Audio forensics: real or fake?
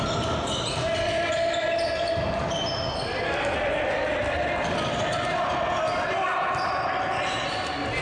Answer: real